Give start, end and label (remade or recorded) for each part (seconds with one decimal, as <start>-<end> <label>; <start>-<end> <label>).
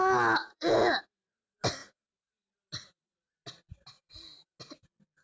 0.0-0.4 recorded; 0.4-1.0 remade; 1.0-5.2 recorded